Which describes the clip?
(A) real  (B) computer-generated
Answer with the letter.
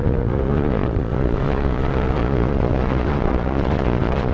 B